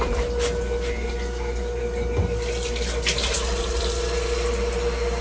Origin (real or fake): real